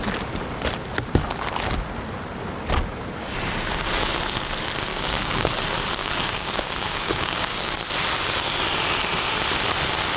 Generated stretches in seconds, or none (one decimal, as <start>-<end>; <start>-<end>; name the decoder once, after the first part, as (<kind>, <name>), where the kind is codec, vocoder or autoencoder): 4.9-5.5 (codec, DAC); 6.0-7.7

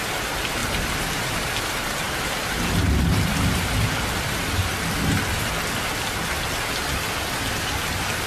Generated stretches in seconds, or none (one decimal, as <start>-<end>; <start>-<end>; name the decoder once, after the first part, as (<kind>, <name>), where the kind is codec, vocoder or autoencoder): none

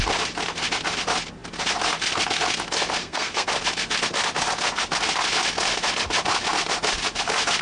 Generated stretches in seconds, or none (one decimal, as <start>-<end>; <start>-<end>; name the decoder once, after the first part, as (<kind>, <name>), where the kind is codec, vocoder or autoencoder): 3.0-3.5 (codec, SNAC)

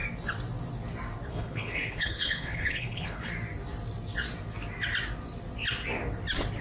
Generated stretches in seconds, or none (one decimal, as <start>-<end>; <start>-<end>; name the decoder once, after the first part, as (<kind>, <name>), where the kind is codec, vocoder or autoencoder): 1.3-3.3 (codec, HILCodec)

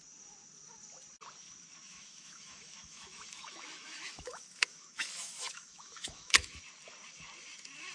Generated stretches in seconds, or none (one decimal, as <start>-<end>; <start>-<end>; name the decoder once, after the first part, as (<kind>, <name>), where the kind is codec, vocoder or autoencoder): 1.9-6.6 (autoencoder, DAC-VAE)

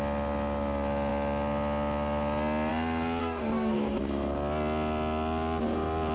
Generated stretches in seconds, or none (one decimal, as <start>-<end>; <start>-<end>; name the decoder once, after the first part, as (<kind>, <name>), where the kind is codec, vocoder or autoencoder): 3.2-4.0 (codec, DAC)

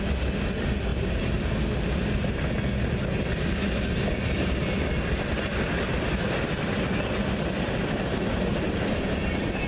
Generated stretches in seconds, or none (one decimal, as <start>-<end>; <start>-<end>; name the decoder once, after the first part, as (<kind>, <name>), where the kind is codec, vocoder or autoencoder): 0.9-1.5 (vocoder, BigVGAN v2)

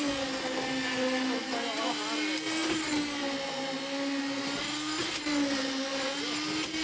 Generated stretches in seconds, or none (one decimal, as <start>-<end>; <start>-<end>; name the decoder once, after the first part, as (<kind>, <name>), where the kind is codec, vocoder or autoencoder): none